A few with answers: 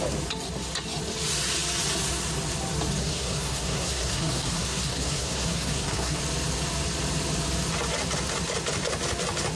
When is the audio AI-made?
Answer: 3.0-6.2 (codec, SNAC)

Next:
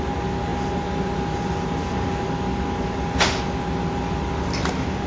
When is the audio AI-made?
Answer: none

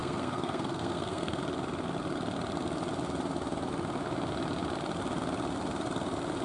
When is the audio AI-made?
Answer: 0.0-1.4 (codec, SNAC)

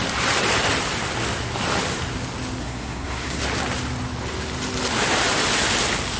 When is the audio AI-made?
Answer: 2.6-3.4 (codec, SNAC)